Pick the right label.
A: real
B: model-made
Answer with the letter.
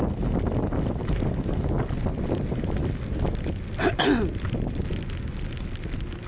A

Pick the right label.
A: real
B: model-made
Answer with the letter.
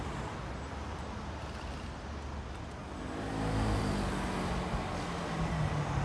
A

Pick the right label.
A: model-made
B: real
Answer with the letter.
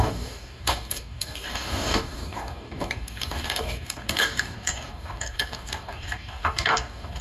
A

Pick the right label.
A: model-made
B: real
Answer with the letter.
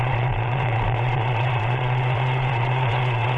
A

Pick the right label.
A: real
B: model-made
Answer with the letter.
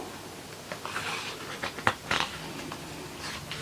A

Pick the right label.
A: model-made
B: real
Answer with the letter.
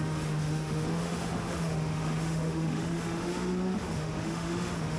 A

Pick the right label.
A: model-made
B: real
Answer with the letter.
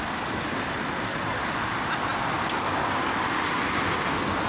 B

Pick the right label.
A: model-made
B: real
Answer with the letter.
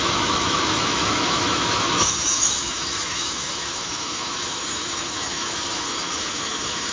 A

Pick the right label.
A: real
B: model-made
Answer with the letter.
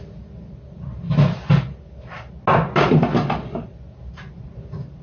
A